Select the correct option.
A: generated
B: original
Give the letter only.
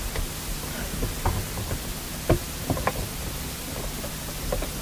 B